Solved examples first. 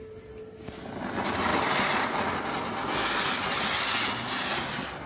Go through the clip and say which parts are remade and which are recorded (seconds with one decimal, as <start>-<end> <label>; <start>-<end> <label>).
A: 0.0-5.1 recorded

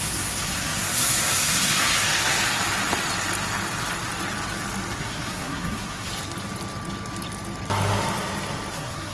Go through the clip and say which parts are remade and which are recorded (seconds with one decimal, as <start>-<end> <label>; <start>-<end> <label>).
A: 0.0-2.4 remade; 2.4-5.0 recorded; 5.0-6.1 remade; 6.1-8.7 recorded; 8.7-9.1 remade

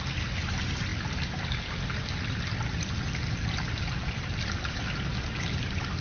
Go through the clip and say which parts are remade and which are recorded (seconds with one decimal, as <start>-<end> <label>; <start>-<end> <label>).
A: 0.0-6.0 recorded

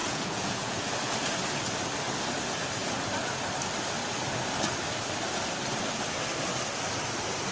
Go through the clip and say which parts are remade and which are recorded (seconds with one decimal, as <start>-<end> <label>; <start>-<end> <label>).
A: 0.0-0.8 remade; 0.8-7.5 recorded

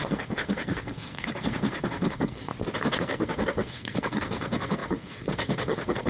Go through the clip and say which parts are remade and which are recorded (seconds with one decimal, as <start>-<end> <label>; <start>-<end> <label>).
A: 0.0-2.5 remade; 2.5-3.0 recorded; 3.0-6.1 remade